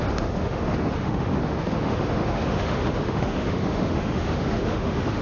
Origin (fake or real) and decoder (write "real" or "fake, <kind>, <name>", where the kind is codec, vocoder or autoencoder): fake, autoencoder, DAC-VAE